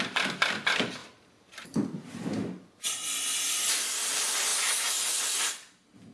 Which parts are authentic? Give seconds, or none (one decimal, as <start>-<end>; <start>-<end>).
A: 0.0-6.1